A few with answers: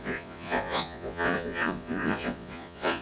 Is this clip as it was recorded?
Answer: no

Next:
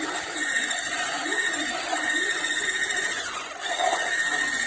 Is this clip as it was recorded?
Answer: no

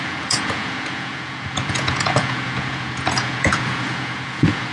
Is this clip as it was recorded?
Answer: no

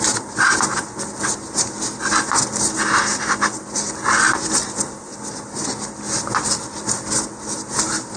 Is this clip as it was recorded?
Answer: yes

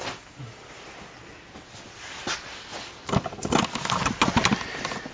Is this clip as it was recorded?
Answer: yes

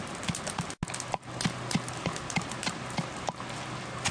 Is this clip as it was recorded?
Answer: yes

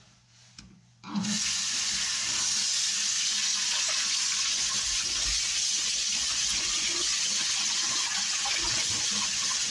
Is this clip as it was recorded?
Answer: no